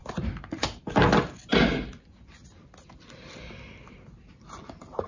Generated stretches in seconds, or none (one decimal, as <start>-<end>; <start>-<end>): none